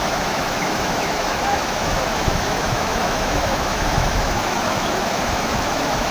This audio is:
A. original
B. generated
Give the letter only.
B